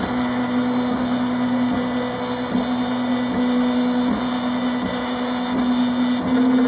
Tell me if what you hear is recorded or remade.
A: recorded